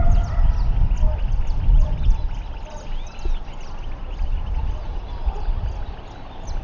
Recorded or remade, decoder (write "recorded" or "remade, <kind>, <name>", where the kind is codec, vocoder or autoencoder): recorded